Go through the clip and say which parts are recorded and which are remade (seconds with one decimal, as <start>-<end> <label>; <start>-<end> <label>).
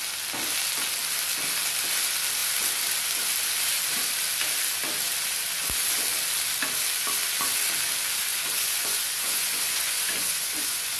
0.0-8.3 recorded; 8.3-11.0 remade